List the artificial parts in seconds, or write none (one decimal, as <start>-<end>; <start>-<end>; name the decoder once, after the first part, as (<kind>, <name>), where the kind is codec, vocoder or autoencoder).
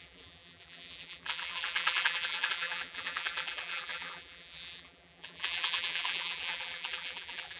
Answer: 0.0-7.6 (vocoder, BigVGAN v2)